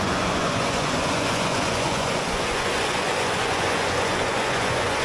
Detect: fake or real fake